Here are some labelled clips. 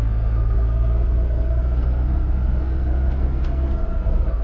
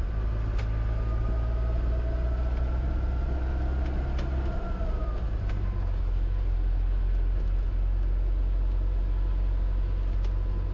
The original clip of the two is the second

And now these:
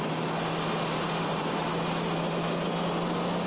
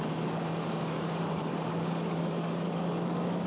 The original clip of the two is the first